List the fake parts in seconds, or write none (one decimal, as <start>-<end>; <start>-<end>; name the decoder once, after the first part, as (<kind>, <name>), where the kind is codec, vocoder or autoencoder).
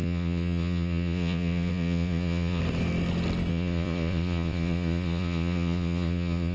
0.0-2.6 (vocoder, Vocos); 3.5-6.5